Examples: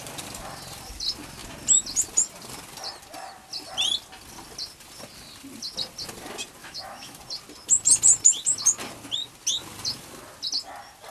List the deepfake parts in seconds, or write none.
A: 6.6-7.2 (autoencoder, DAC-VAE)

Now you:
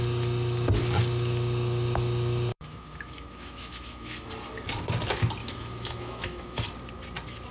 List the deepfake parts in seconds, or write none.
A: 2.5-4.3 (autoencoder, DAC-VAE); 5.4-6.6

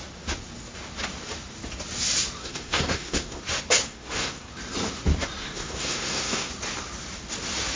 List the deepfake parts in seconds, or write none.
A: 2.4-3.4 (codec, SNAC); 3.8-4.5; 5.4-6.5

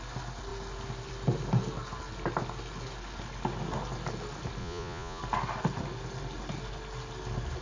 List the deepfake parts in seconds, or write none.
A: 4.6-5.2 (vocoder, Vocos)

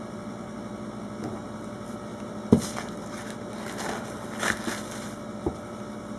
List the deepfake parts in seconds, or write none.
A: none

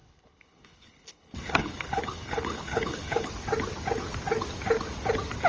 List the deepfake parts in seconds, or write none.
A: 0.0-3.3 (codec, HILCodec)